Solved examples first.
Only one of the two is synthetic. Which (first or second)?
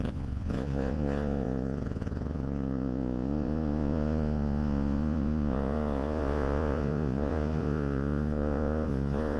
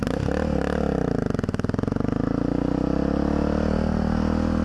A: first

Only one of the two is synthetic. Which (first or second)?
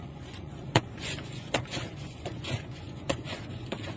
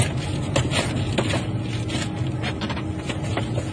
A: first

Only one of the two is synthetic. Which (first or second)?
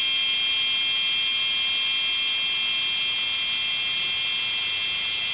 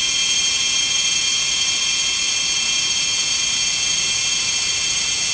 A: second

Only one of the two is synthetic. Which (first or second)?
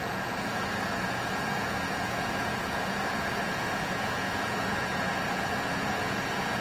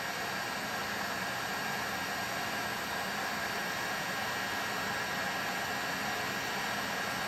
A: first